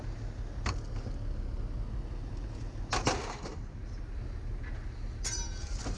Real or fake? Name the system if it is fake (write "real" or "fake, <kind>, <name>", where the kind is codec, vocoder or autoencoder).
real